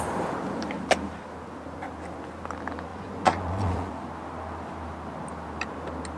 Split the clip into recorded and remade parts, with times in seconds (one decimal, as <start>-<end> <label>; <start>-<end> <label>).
0.0-2.9 recorded; 2.9-3.9 remade; 3.9-6.2 recorded